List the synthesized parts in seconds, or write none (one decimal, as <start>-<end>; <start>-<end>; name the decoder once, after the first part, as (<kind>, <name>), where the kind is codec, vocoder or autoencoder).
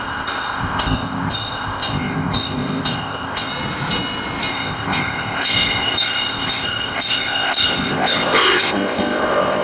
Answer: 0.0-3.5 (codec, ZipCodec); 4.5-9.6